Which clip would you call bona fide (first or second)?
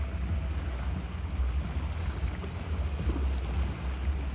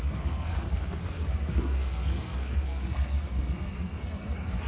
first